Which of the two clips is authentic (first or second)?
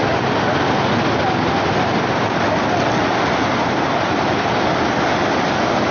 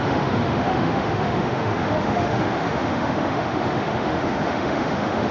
first